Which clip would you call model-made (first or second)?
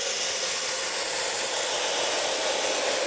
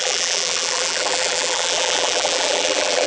second